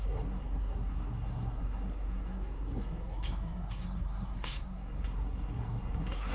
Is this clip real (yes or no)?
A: no